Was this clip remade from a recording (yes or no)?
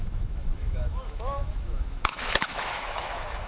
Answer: yes